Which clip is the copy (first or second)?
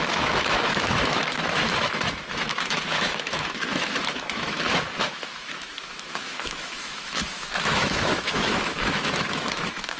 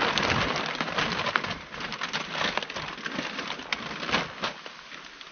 first